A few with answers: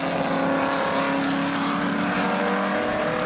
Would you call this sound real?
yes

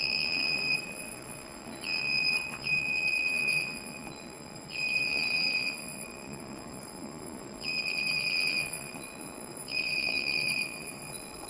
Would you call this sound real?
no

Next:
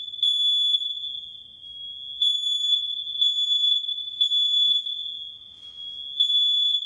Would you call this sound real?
yes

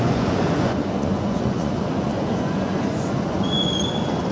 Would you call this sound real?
no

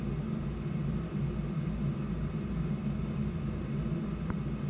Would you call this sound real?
yes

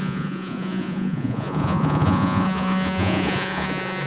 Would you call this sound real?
no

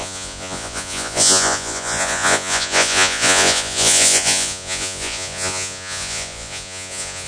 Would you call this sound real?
no